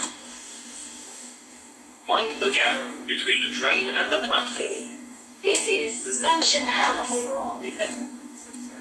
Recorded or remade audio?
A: remade